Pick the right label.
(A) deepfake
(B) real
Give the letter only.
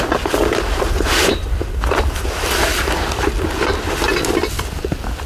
B